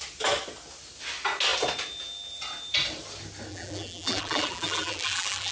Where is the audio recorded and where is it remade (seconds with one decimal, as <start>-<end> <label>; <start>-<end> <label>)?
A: 0.0-3.5 recorded; 3.5-5.5 remade